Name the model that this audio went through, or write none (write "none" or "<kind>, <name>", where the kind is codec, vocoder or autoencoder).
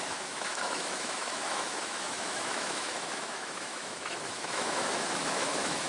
autoencoder, DAC-VAE